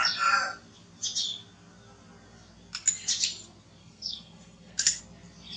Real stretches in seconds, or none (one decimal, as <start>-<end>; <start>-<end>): 0.0-3.8; 5.0-5.6